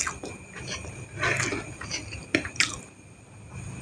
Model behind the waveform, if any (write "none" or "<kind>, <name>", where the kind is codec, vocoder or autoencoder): none